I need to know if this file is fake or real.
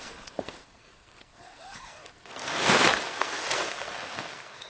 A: fake